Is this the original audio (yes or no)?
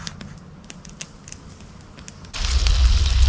yes